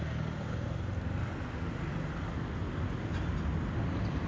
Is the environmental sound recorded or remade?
recorded